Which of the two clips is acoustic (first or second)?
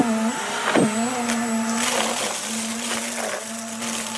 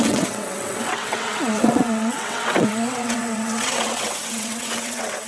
first